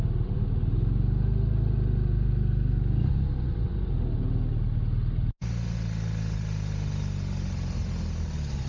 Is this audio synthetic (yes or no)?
no